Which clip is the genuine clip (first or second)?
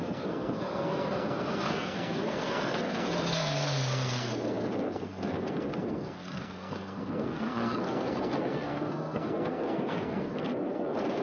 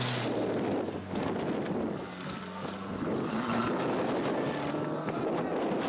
second